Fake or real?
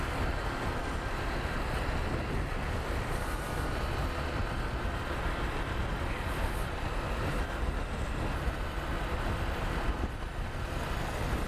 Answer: real